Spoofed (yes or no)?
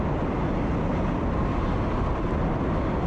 no